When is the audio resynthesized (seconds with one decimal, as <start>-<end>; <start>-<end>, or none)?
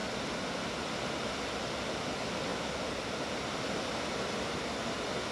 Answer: none